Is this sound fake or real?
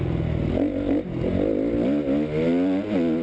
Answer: real